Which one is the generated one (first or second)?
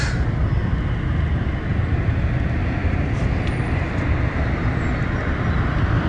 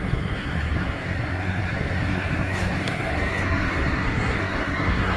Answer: second